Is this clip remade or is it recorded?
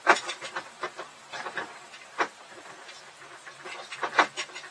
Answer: remade